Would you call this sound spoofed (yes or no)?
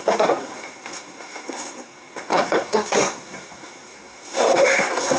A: yes